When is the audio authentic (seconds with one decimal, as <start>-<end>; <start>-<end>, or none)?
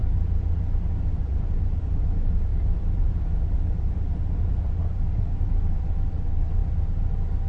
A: 6.6-7.5